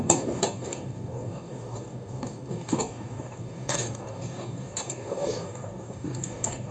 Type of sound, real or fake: fake